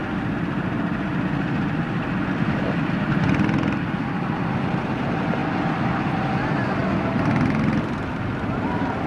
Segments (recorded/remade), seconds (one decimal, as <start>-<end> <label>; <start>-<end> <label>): 0.0-5.4 recorded; 5.4-6.0 remade; 6.0-6.8 recorded; 6.8-8.1 remade; 8.1-9.1 recorded